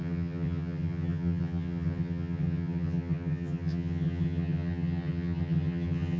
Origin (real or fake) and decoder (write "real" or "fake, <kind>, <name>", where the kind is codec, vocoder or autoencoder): fake, vocoder, HiFi-GAN